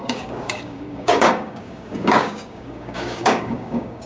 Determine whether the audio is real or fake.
fake